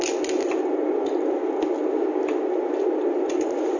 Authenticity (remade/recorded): recorded